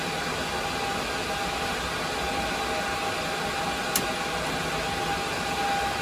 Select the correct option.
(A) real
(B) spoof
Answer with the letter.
A